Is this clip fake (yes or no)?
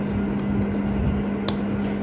no